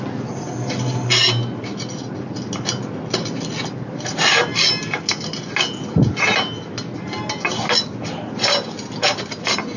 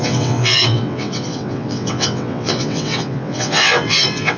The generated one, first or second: second